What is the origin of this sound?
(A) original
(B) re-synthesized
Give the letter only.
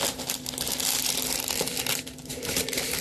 A